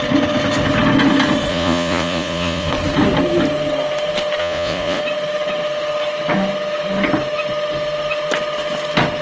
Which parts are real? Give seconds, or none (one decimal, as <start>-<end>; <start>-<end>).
0.0-1.5; 2.7-4.4; 5.0-9.2